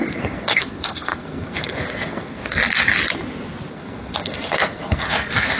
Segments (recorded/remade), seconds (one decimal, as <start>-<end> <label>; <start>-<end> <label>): 0.0-2.6 remade; 2.6-3.7 recorded; 3.7-5.6 remade